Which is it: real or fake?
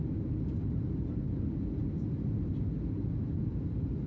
real